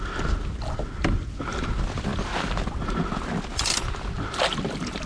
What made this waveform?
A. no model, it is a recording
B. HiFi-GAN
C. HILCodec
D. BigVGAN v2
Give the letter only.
A